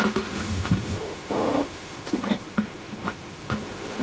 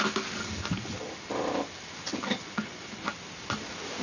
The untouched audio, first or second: second